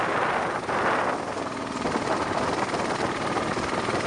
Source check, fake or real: real